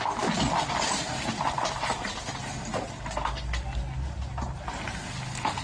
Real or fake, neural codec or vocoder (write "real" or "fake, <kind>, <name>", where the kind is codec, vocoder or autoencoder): real